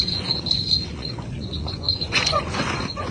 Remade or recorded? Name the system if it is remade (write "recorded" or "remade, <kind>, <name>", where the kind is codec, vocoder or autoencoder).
remade, vocoder, Vocos